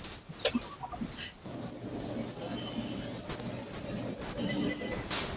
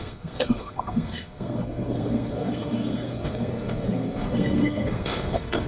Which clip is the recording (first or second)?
first